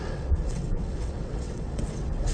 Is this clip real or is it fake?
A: fake